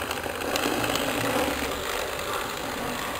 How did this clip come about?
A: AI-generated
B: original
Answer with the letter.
B